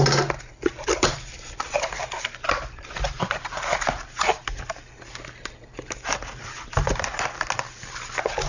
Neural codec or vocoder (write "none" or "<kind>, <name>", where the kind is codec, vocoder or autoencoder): none